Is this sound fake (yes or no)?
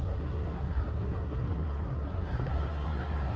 yes